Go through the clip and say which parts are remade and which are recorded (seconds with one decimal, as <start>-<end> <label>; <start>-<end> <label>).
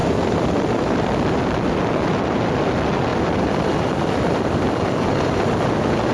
0.0-1.0 remade; 1.0-3.1 recorded; 3.1-4.7 remade; 4.7-6.1 recorded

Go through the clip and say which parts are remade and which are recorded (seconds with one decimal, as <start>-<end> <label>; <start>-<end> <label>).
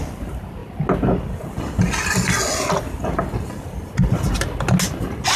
0.0-5.4 recorded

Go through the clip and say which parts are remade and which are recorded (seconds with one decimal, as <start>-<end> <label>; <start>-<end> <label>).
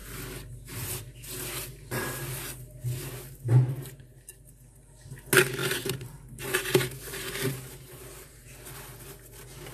0.0-5.6 recorded; 5.6-8.5 remade; 8.5-9.7 recorded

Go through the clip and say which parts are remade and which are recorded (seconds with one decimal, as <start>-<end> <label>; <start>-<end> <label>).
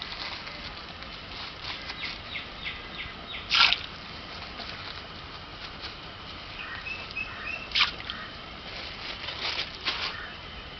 0.0-1.1 recorded; 1.1-2.4 remade; 2.4-5.5 recorded; 5.5-10.8 remade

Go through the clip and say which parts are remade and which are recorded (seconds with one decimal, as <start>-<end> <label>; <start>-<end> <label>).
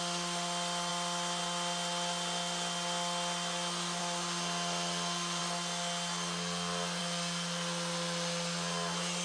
0.0-9.2 recorded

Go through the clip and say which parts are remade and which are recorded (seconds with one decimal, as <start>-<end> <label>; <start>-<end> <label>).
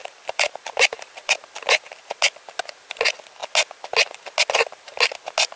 0.0-1.3 remade; 1.3-5.6 recorded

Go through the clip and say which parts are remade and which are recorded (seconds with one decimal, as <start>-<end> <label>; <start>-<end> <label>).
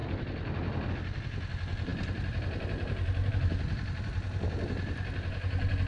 0.0-5.9 recorded